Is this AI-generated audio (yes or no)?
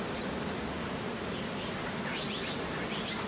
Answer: no